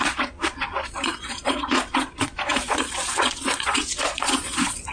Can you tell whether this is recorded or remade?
remade